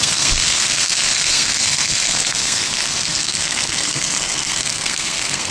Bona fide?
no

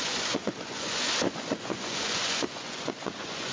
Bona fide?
no